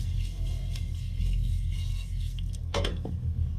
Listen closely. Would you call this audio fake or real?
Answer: fake